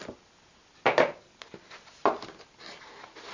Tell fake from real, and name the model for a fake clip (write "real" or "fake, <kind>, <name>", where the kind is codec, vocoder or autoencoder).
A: real